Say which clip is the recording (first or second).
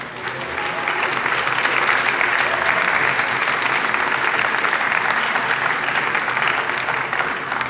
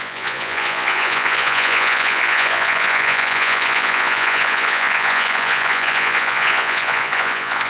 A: first